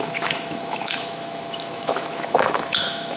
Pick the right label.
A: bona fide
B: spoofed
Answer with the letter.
B